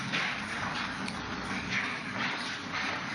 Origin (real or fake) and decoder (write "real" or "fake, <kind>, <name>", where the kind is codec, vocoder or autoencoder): fake, codec, DAC